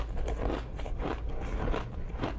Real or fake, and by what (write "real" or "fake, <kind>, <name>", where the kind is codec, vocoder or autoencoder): real